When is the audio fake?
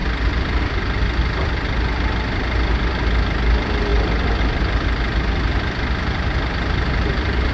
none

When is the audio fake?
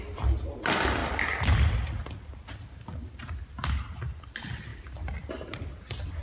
none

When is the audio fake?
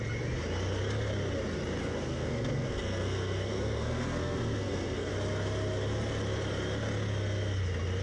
1.8-5.1 (codec, SNAC)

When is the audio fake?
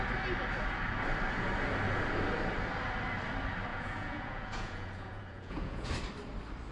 3.7-5.9 (vocoder, Vocos)